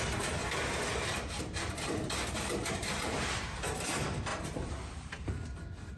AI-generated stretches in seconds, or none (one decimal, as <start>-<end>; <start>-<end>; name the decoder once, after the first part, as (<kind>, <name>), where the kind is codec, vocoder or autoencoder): 0.0-0.4 (vocoder, BigVGAN v2); 1.4-6.0